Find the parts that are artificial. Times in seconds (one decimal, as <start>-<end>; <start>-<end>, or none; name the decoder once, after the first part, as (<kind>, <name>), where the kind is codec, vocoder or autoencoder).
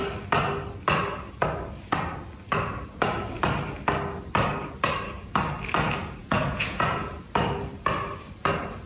6.2-7.1 (vocoder, Vocos)